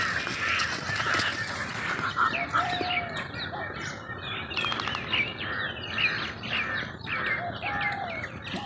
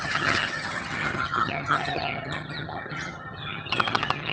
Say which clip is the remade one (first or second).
second